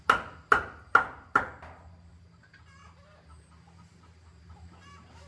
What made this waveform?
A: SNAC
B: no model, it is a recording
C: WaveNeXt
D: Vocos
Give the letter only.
B